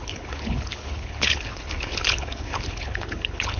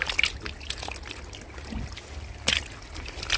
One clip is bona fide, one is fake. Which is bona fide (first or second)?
second